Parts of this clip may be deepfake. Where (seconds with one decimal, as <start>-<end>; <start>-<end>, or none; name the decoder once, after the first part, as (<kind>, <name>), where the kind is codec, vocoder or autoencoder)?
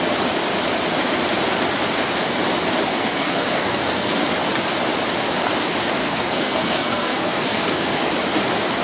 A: 2.9-4.2 (codec, SNAC); 6.0-8.1